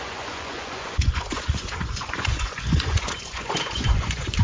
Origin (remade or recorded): remade